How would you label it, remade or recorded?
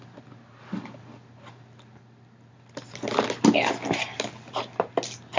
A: recorded